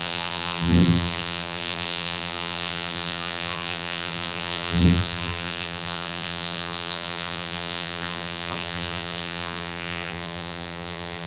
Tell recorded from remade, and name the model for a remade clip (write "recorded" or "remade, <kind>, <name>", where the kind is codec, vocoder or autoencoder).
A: remade, vocoder, BigVGAN v2